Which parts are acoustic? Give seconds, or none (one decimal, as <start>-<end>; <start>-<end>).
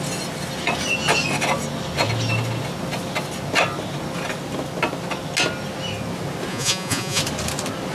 0.0-6.5; 7.2-7.9